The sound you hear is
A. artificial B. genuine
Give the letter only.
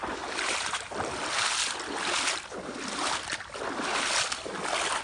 B